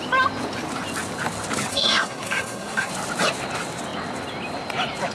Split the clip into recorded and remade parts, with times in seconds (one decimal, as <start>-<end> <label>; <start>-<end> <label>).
0.0-1.7 recorded; 1.7-2.9 remade; 2.9-5.1 recorded